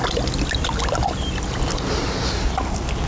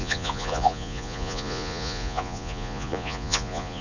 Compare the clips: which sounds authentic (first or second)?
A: first